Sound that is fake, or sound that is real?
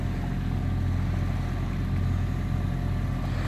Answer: real